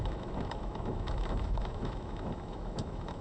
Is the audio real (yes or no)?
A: no